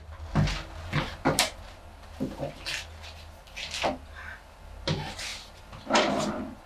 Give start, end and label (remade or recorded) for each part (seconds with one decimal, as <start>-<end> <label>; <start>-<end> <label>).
0.0-6.7 recorded